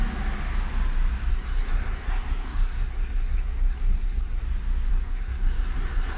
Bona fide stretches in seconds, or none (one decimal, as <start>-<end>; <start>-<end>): 0.0-1.3; 4.4-4.9